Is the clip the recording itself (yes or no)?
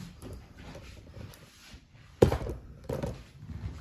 no